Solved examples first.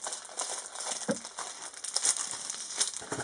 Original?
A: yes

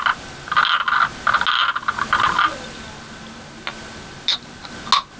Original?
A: yes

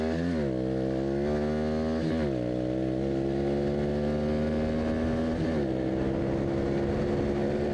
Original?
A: yes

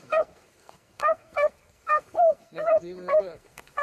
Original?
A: no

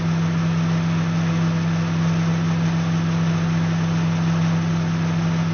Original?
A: yes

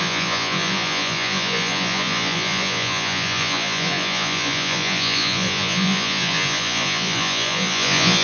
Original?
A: no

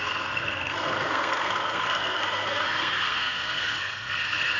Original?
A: no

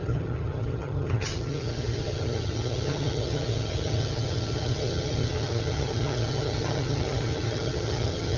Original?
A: no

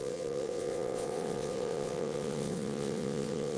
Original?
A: no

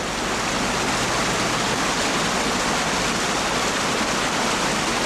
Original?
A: yes